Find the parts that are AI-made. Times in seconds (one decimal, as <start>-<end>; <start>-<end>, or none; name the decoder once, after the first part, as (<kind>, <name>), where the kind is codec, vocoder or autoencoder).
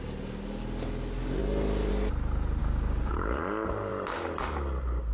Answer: 2.6-3.4 (codec, DAC)